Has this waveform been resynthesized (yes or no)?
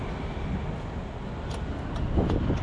no